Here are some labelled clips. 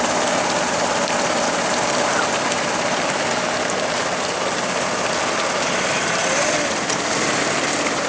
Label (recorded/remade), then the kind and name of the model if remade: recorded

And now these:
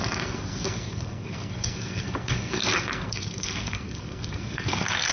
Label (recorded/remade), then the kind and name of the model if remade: remade, codec, SNAC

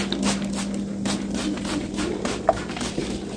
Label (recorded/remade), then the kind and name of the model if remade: recorded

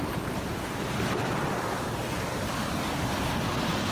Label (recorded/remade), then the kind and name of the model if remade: remade, vocoder, BigVGAN v2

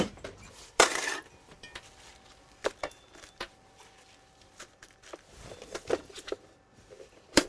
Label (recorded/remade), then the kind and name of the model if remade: remade, vocoder, BigVGAN v2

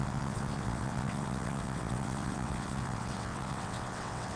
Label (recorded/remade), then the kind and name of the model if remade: remade, vocoder, WaveNeXt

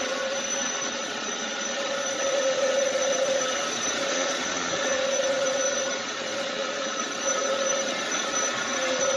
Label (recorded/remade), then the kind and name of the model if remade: remade, vocoder, Vocos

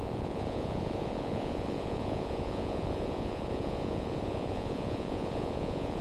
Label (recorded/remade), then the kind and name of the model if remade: remade, vocoder, Vocos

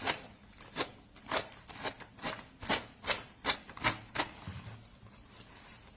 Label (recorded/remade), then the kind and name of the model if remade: recorded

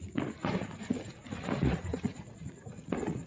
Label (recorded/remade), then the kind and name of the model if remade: remade, vocoder, Vocos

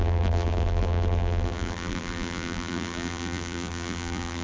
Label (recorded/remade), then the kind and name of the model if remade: remade, vocoder, BigVGAN v2